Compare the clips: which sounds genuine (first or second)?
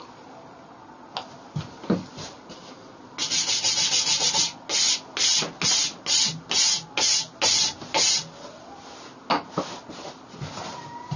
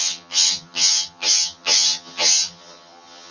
first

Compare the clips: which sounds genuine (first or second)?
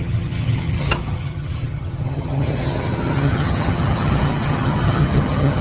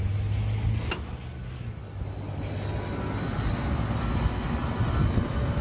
second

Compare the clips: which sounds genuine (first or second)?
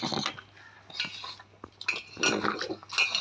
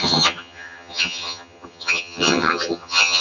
first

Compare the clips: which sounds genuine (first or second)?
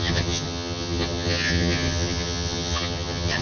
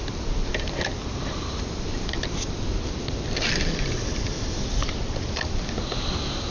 second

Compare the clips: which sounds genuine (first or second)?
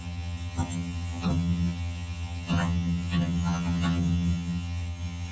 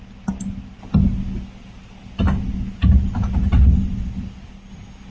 second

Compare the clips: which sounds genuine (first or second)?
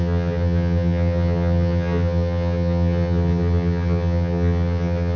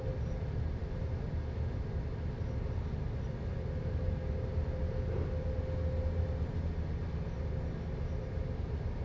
second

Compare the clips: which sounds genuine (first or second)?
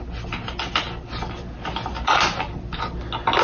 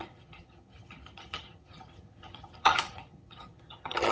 first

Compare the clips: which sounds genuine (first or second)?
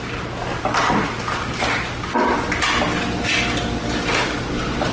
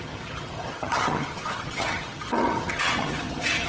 first